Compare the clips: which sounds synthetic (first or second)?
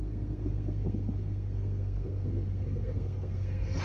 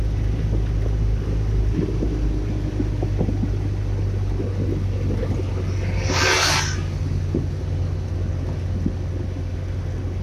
first